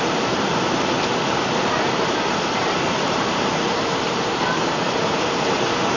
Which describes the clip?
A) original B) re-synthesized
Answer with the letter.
B